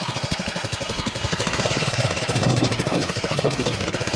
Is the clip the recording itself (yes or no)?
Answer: no